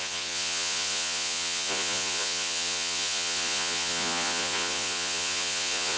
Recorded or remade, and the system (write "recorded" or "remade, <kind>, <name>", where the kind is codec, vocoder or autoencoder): remade, vocoder, Vocos